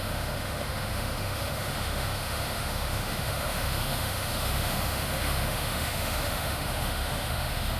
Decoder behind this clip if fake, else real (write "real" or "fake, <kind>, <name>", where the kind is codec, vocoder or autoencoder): fake, autoencoder, DAC-VAE